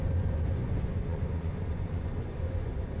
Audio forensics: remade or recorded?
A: remade